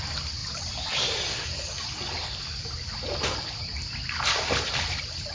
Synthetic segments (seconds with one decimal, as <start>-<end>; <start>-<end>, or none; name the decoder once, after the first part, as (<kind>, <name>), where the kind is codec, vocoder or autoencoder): 0.4-3.6 (vocoder, BigVGAN v2)